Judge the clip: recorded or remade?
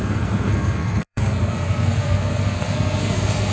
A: remade